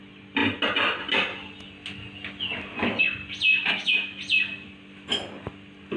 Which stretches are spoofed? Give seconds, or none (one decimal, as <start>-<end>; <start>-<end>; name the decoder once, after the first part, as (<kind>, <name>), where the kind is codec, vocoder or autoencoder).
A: 3.5-4.2 (autoencoder, DAC-VAE)